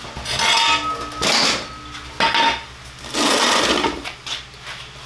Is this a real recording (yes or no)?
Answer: yes